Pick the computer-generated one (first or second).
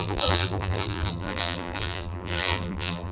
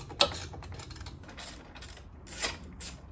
first